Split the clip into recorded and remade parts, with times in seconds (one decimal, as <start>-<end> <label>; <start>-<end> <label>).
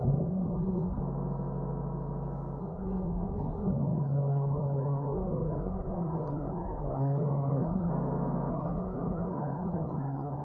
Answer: 0.0-1.0 remade; 1.0-2.6 recorded; 2.6-7.9 remade; 7.9-8.5 recorded; 8.5-10.4 remade